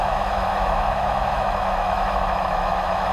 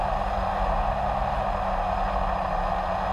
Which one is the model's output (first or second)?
first